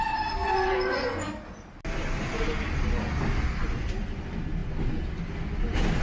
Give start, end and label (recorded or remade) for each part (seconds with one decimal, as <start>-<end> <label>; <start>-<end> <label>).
0.0-0.4 recorded; 0.4-1.3 remade; 1.3-6.0 recorded